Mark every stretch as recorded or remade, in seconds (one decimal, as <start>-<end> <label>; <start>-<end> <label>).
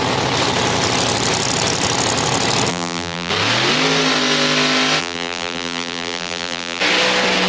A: 0.0-2.7 recorded; 2.7-3.3 remade; 3.3-5.0 recorded; 5.0-6.8 remade; 6.8-7.5 recorded